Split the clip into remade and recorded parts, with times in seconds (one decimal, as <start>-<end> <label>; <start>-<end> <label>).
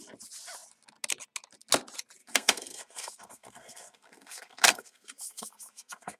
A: 0.0-2.2 recorded; 2.2-6.2 remade